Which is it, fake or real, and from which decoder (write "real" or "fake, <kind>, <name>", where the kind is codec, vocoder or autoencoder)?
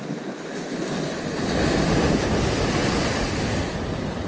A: fake, vocoder, BigVGAN v2